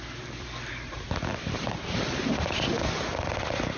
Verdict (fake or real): real